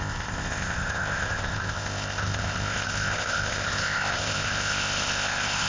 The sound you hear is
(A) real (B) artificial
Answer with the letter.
B